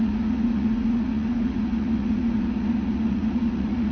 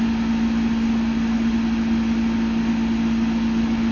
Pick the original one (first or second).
second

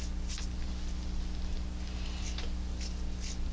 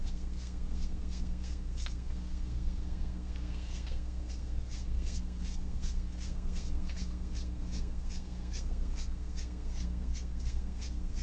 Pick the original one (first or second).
first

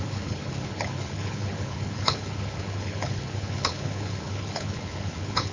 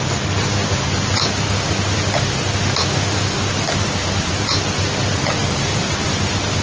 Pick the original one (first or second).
second